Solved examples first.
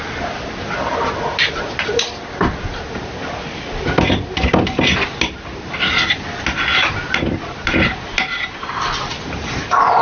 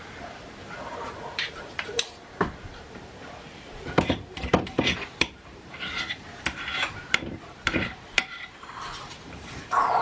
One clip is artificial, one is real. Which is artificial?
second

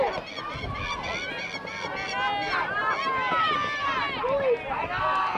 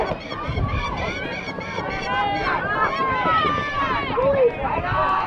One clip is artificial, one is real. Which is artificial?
second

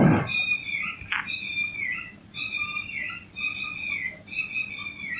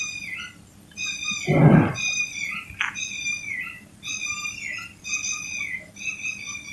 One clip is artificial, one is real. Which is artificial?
second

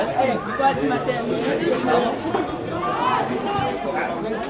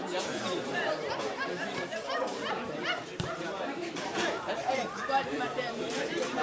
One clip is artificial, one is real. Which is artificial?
second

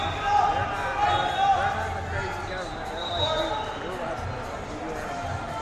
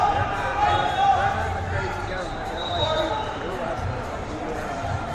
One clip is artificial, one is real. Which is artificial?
second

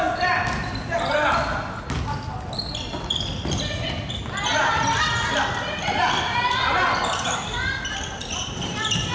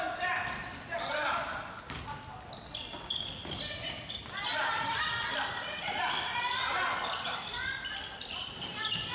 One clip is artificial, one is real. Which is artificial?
second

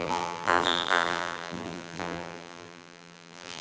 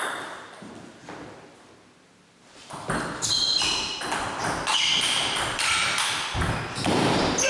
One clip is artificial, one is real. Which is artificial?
first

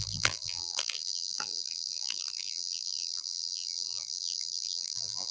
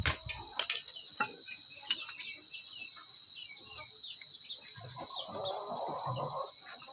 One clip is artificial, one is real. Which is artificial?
first